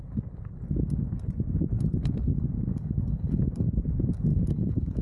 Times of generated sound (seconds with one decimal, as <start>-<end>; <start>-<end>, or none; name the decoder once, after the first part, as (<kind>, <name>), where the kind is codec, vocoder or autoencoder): 2.7-3.6 (codec, HILCodec); 4.3-5.0